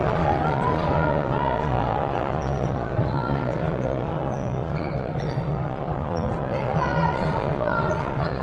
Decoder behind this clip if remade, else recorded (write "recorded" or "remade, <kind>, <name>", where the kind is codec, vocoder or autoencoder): remade, vocoder, Vocos